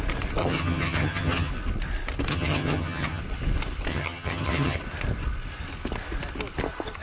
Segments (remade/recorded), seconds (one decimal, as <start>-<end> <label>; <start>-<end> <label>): 0.0-0.4 recorded; 0.4-1.5 remade; 1.5-2.3 recorded; 2.3-3.2 remade; 3.2-3.9 recorded; 3.9-4.8 remade; 4.8-7.0 recorded